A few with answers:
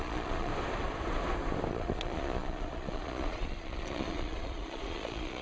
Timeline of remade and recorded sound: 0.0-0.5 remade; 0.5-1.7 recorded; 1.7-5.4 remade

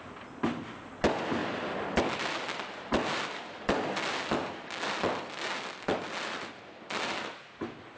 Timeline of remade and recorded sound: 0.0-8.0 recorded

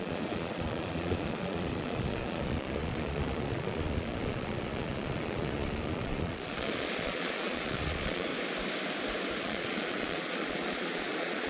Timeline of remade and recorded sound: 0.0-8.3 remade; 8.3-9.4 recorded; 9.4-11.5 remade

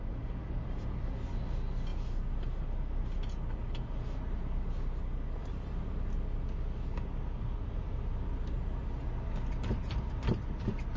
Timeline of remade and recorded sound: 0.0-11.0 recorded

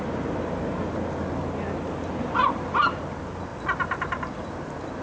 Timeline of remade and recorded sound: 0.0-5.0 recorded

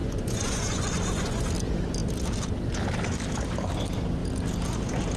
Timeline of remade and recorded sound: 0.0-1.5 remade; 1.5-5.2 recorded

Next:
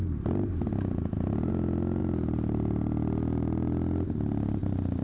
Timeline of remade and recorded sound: 0.0-5.0 recorded

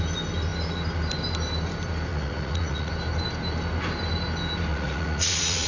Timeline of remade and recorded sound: 0.0-2.1 recorded; 2.1-2.9 remade; 2.9-4.7 recorded; 4.7-5.7 remade